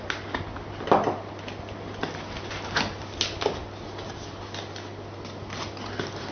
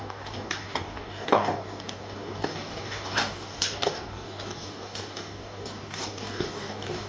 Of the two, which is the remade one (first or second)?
second